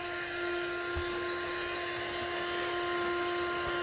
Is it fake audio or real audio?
real